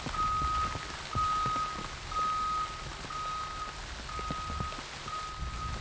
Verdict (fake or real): real